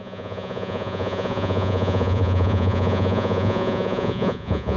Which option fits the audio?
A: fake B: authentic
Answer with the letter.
A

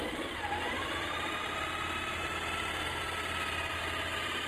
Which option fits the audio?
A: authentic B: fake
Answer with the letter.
A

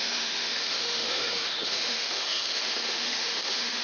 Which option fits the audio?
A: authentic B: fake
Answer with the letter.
B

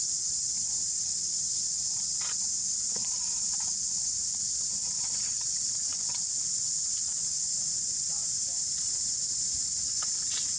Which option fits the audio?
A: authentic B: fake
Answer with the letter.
B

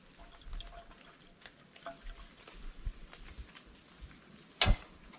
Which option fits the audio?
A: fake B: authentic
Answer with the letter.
B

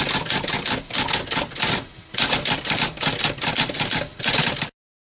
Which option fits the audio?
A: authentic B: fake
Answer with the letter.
A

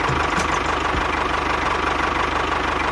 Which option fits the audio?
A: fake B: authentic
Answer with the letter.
B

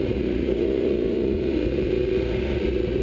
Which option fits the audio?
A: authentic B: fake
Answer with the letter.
B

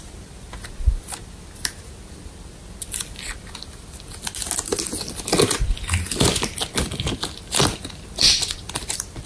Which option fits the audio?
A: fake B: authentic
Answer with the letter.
B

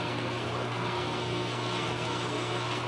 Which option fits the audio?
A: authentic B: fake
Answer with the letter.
B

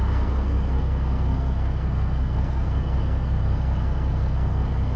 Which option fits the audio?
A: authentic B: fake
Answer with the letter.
B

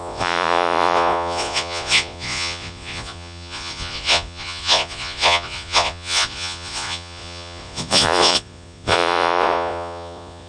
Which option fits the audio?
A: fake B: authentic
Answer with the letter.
A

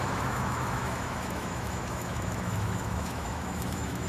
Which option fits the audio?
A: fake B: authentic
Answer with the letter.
A